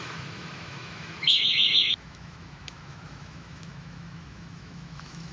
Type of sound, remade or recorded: remade